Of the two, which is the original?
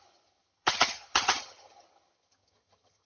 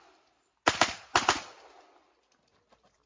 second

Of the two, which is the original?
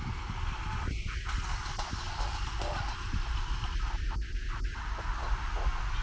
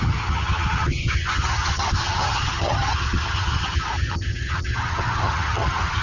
first